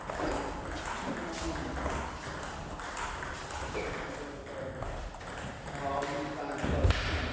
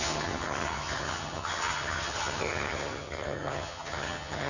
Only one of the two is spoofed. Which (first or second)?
second